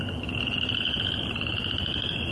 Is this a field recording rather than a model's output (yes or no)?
yes